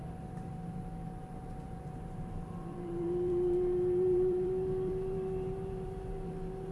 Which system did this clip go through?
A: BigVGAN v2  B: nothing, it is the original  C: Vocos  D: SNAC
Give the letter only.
A